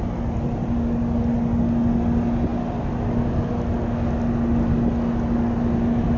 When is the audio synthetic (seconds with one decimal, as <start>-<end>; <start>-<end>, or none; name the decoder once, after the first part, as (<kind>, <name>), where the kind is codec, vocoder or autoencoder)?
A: none